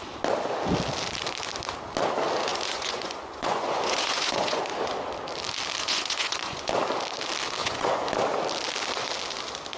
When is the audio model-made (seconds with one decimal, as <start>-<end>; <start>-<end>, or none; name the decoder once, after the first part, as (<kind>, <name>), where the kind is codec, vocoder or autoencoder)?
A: 2.5-4.6 (vocoder, Vocos); 5.8-6.7; 7.6-8.1